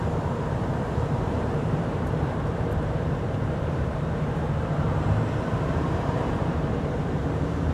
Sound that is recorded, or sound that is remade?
remade